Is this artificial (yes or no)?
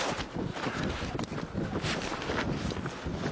no